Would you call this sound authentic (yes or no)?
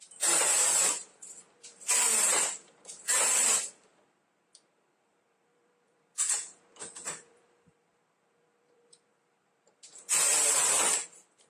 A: no